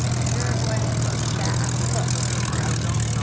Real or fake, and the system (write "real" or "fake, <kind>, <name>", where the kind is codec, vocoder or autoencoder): real